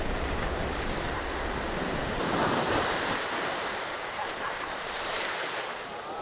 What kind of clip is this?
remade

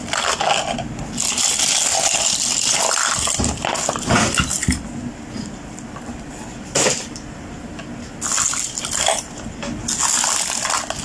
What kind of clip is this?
recorded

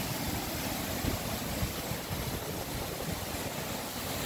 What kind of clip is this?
recorded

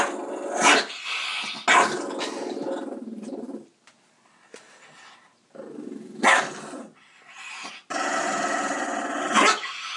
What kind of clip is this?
recorded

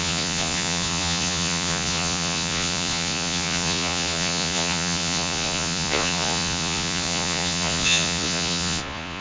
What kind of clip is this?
remade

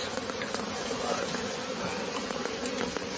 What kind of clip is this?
remade